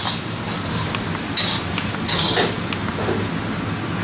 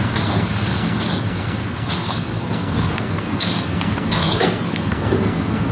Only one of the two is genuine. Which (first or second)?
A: first